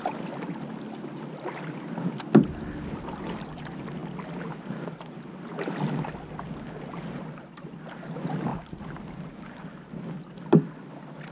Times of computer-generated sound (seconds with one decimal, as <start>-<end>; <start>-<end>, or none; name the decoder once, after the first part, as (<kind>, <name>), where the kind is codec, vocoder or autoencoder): none